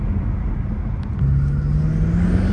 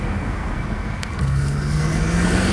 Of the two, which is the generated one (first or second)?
second